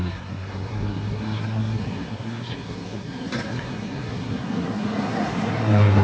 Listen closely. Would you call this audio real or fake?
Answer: fake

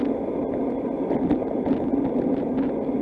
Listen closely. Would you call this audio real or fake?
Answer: real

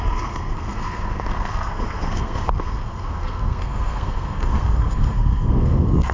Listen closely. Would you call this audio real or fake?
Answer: fake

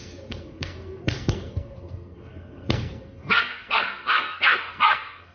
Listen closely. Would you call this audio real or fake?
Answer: fake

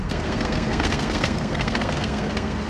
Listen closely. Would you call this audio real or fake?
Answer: fake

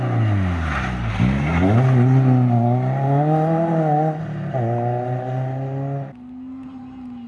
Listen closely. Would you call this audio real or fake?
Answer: real